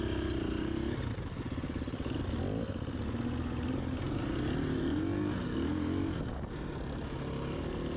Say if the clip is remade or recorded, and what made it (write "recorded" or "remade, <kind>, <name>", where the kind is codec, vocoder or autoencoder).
recorded